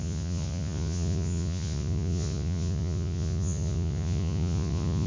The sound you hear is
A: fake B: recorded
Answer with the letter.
A